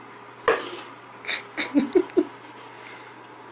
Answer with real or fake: real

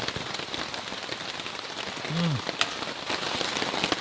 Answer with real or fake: real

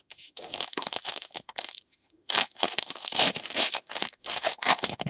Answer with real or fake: fake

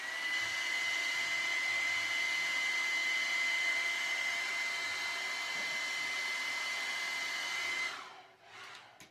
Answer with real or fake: real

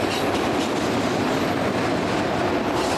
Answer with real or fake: real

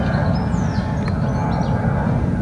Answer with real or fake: real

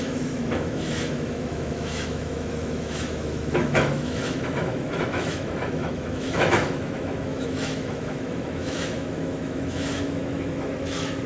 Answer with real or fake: fake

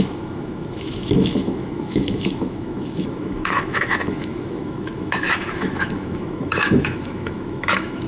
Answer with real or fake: fake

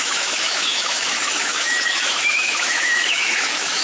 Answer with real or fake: fake